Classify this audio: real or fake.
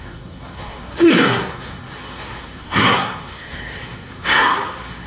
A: fake